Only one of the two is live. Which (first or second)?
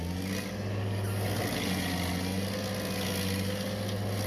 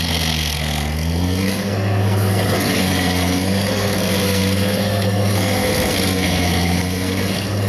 first